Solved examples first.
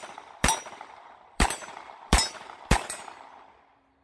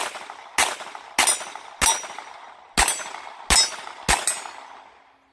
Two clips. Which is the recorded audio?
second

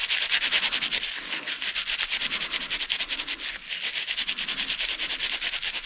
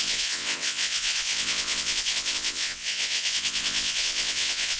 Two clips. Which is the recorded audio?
first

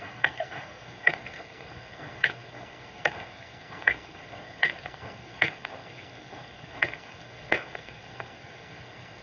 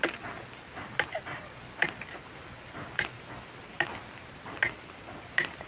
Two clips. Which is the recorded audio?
second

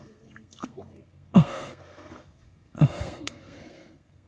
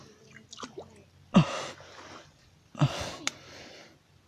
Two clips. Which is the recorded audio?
second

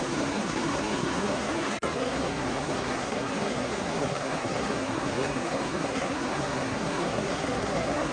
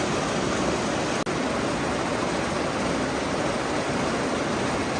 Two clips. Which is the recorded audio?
second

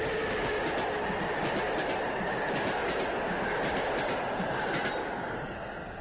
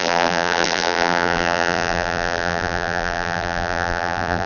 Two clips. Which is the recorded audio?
first